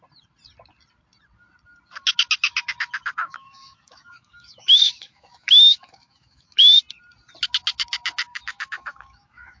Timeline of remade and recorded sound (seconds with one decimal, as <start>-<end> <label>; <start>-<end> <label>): 0.0-3.2 recorded; 3.2-6.6 remade; 6.6-8.3 recorded; 8.3-9.6 remade